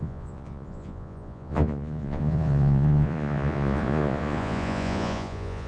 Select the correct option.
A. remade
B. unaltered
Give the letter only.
A